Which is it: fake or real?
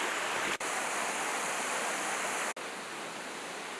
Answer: real